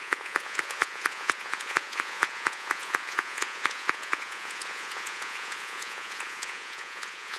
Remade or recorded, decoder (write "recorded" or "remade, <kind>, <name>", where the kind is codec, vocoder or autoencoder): remade, vocoder, Vocos